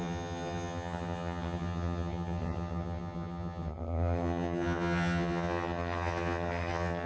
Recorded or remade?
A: remade